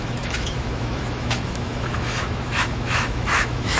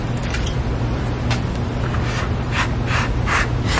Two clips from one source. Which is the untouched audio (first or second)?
second